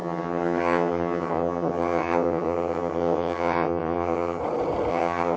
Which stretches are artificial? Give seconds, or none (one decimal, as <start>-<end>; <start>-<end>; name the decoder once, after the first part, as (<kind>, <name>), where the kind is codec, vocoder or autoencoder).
0.0-4.4 (vocoder, HiFi-GAN); 4.9-5.4